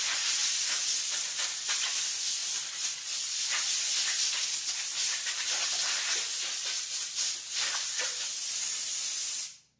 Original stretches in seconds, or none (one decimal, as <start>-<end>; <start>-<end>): 0.0-9.8